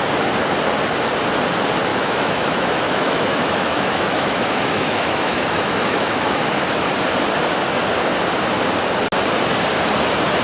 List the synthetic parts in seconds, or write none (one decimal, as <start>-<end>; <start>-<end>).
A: 1.9-6.9